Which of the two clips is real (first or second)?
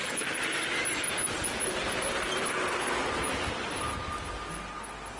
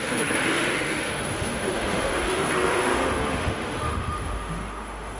first